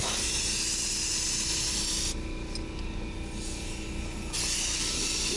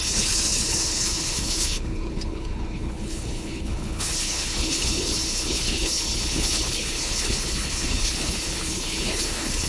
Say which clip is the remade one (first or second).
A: second